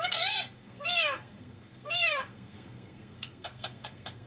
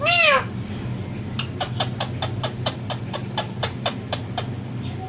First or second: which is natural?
second